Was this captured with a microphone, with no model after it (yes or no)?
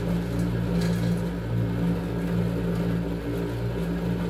yes